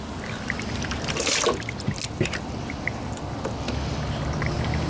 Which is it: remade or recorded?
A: recorded